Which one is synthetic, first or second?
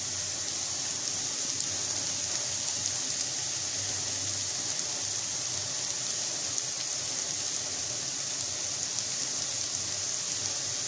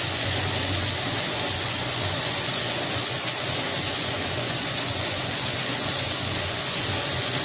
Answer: second